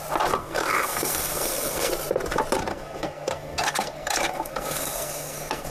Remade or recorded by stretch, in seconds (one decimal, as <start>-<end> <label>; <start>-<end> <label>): 0.0-0.4 recorded; 0.4-1.9 remade; 1.9-2.7 recorded; 2.7-5.7 remade